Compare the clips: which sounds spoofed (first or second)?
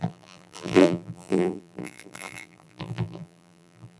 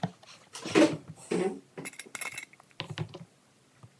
first